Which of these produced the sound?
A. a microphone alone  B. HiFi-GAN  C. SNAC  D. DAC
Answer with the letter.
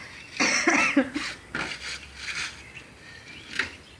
A